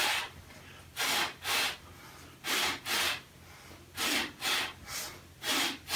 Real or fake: real